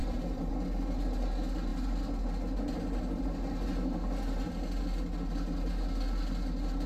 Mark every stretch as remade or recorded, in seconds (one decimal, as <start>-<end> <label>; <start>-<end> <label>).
0.0-0.5 remade; 0.5-6.9 recorded